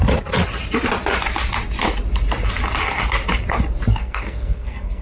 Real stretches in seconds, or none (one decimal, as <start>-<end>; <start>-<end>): 0.0-3.9